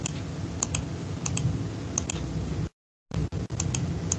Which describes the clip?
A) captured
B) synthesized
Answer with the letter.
A